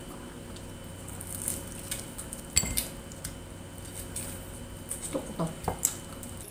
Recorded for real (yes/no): yes